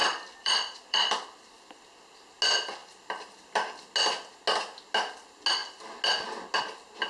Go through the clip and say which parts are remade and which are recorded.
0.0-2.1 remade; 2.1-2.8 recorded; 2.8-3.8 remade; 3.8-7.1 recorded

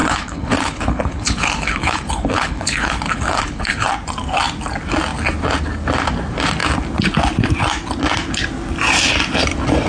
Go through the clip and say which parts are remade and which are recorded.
0.0-3.9 remade; 3.9-9.9 recorded

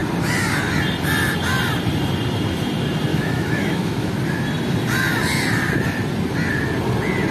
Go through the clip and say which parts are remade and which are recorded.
0.0-3.1 recorded; 3.1-4.1 remade; 4.1-7.3 recorded

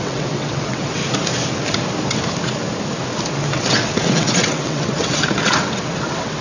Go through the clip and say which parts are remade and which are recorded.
0.0-1.0 remade; 1.0-3.3 recorded; 3.3-6.4 remade